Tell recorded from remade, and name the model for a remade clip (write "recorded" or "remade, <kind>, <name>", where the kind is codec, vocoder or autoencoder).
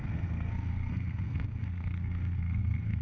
remade, codec, SNAC